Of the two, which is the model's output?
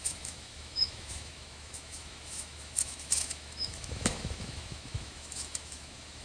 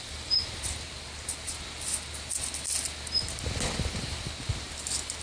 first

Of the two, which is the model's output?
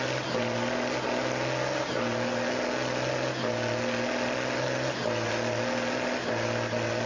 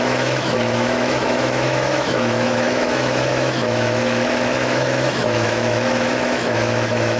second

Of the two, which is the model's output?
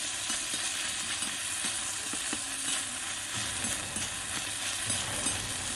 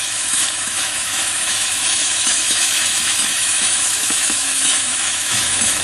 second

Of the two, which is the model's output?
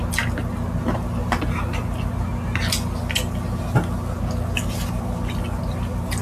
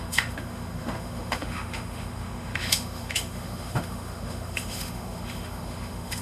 second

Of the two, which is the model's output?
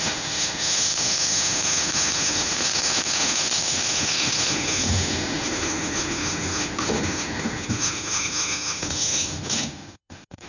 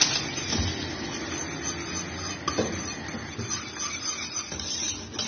first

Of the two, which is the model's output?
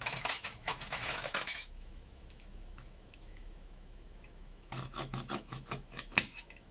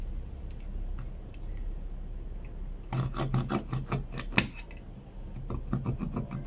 first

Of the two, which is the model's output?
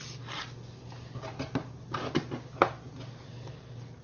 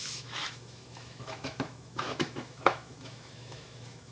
second